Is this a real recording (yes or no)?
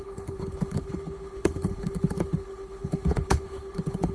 no